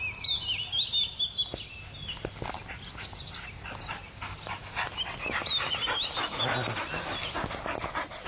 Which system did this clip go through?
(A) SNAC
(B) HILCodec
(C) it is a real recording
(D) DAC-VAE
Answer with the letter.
C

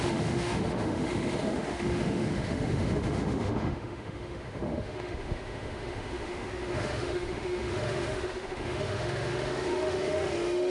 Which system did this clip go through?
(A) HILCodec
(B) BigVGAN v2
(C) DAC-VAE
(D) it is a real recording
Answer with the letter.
C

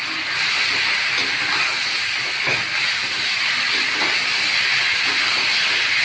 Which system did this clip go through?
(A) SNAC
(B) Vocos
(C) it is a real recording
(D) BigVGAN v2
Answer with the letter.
C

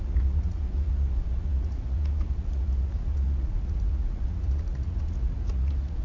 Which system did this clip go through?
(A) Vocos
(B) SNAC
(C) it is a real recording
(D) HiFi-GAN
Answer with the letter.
A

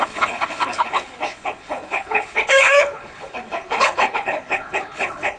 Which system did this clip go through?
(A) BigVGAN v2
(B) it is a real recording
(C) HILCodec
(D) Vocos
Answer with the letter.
C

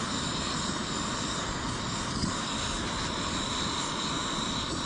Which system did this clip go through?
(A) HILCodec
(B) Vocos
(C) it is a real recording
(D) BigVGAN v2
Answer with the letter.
C